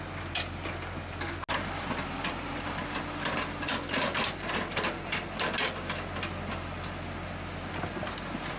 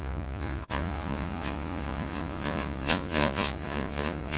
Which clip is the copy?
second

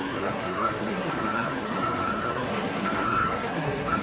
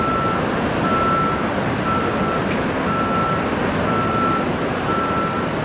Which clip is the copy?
first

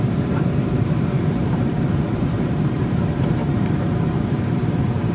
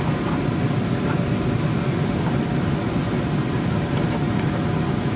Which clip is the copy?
first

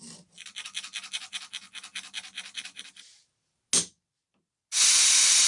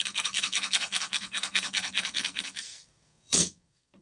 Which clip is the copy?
second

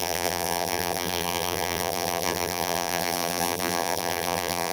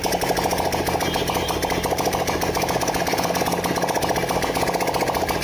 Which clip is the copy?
first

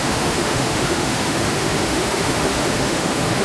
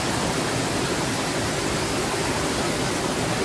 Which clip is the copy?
first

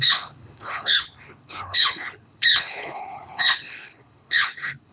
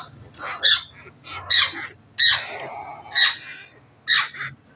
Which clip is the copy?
first